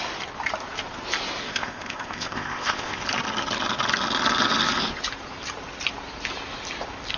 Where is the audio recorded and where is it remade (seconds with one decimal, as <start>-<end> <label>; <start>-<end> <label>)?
0.0-1.4 recorded; 1.4-3.0 remade; 3.0-7.2 recorded